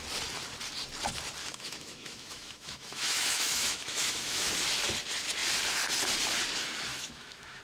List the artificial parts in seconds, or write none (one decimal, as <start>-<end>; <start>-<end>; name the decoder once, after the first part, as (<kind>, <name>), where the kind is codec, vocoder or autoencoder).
1.4-4.5 (autoencoder, DAC-VAE); 6.9-7.6